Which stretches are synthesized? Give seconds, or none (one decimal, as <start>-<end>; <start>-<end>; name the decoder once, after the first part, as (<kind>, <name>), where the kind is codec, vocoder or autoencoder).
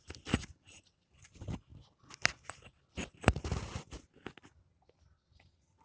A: none